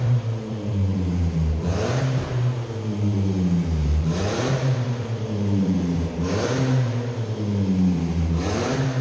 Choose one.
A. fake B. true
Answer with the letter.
A